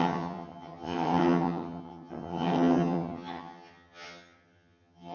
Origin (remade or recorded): remade